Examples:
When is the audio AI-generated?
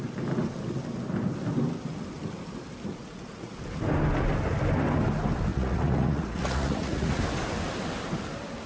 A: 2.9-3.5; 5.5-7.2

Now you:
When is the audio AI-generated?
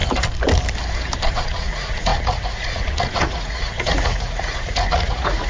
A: 1.3-5.5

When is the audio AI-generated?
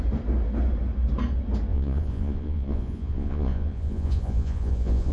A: 1.7-5.1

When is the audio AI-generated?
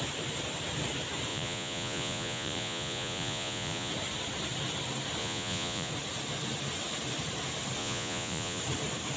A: 1.3-3.9; 5.2-5.9; 7.8-8.6